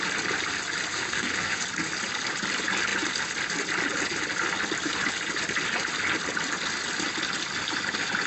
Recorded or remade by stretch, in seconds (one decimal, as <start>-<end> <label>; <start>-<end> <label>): 0.0-0.9 recorded; 0.9-1.6 remade; 1.6-8.3 recorded